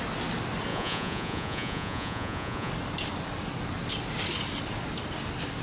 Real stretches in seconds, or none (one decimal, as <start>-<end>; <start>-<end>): 0.0-0.7; 2.7-5.6